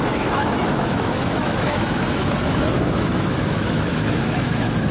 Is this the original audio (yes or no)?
no